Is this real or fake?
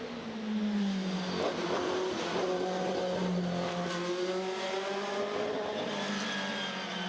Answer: real